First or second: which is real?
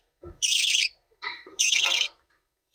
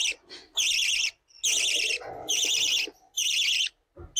second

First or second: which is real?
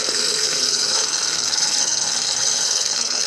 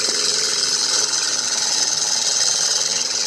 second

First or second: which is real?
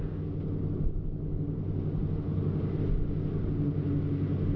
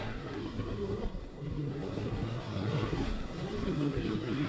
first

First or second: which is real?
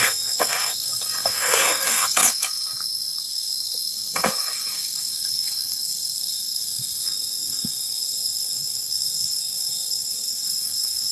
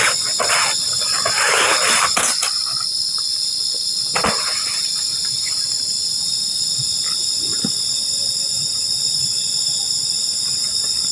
second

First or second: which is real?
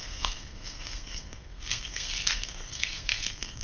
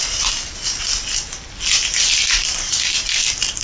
second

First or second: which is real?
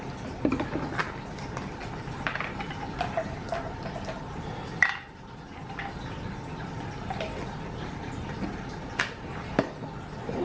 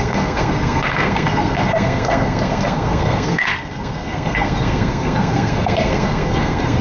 first